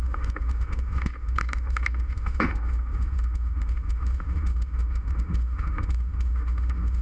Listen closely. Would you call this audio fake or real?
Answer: fake